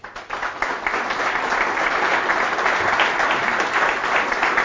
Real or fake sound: real